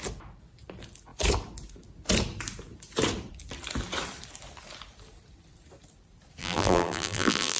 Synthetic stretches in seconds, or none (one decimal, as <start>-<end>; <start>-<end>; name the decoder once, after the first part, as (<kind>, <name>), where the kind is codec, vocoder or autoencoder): 6.4-7.6 (vocoder, BigVGAN v2)